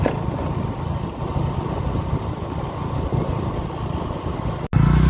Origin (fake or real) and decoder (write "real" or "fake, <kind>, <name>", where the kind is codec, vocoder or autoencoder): real